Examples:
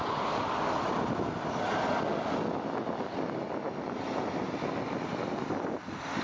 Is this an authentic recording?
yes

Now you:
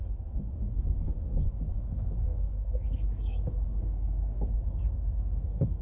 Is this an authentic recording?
no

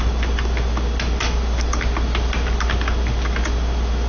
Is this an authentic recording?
yes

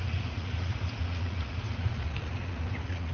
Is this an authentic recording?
no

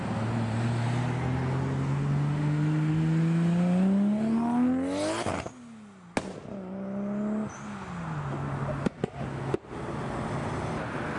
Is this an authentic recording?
yes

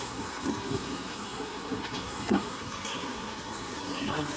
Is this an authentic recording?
no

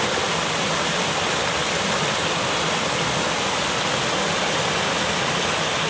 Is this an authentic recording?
yes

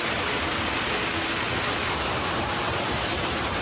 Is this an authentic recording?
yes